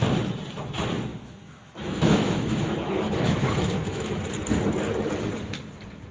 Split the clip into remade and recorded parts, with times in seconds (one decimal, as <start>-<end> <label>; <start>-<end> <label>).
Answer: 0.0-1.1 recorded; 1.1-4.1 remade; 4.1-6.1 recorded